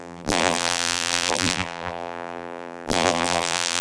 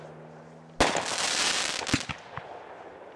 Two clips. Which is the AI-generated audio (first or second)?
first